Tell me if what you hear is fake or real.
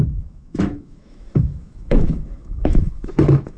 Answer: fake